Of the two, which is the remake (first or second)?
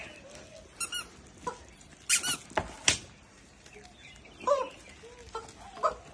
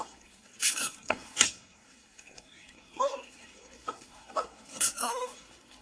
second